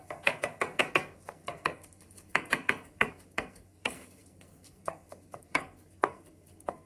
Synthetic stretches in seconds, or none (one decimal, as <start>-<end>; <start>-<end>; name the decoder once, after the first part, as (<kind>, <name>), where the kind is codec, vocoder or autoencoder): 0.0-6.9 (codec, SNAC)